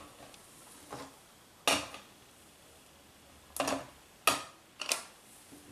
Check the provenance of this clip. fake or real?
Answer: real